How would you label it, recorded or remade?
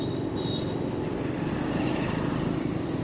recorded